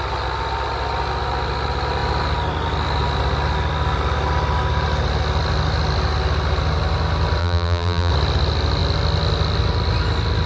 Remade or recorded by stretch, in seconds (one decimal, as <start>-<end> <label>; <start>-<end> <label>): 0.0-7.4 recorded; 7.4-8.1 remade; 8.1-10.5 recorded